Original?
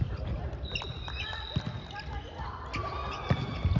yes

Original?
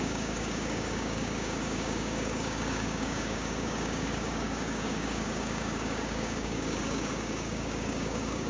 no